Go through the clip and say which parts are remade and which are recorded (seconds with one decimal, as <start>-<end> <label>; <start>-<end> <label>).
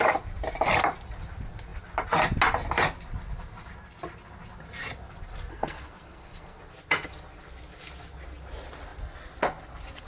0.0-5.5 recorded; 5.5-6.6 remade; 6.6-10.1 recorded